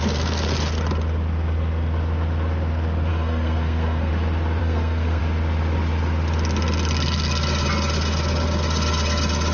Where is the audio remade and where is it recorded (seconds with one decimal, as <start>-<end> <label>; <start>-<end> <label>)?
0.0-3.1 recorded; 3.1-4.1 remade; 4.1-4.6 recorded; 4.6-5.2 remade; 5.2-9.5 recorded